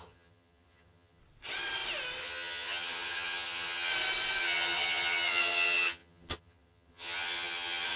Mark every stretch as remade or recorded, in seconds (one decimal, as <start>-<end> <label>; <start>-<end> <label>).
0.0-1.2 remade; 1.2-2.2 recorded; 2.2-3.9 remade; 3.9-4.4 recorded; 4.4-8.0 remade